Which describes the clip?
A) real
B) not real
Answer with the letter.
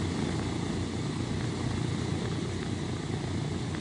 A